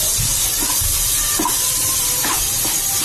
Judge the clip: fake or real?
real